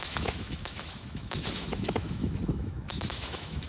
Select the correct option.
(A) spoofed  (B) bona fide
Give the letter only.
A